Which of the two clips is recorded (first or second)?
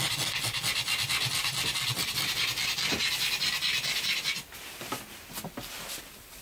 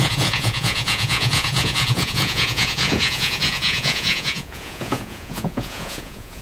first